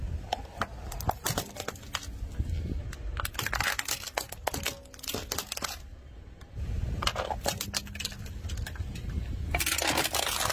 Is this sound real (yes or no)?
yes